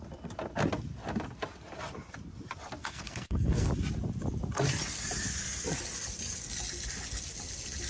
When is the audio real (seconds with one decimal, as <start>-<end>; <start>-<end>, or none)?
0.0-2.8; 3.7-7.9

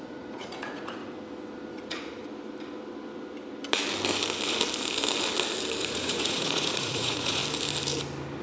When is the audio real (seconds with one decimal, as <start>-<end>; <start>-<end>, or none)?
1.0-1.7; 2.2-5.8; 7.4-8.4

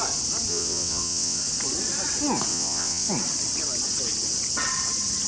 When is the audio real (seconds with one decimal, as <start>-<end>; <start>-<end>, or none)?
0.0-0.5; 1.4-2.5; 3.1-5.3